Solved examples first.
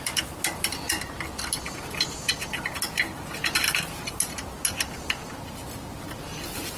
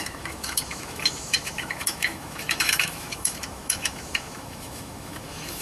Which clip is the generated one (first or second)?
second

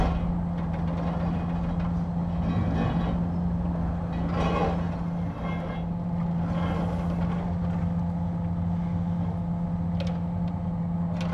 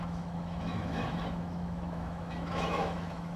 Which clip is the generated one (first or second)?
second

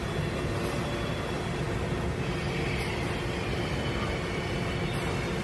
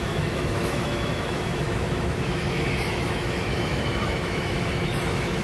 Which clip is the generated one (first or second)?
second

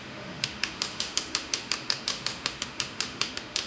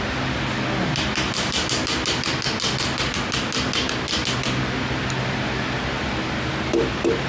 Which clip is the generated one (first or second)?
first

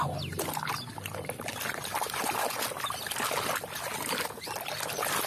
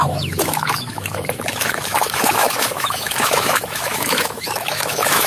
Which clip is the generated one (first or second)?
second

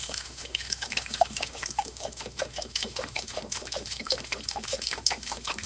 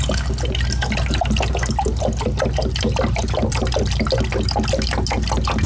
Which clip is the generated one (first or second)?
first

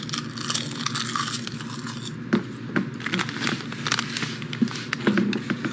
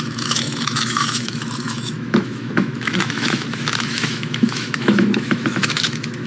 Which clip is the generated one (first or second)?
second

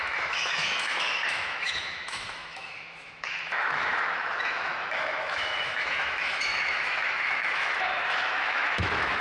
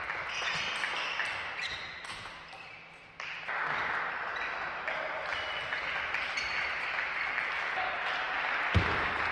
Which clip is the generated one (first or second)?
first